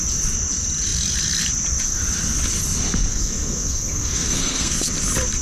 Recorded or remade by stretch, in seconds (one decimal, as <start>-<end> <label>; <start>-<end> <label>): 0.0-3.1 recorded; 3.1-4.9 remade; 4.9-5.4 recorded